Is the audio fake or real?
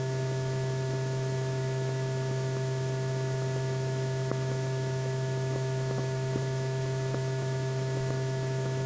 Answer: fake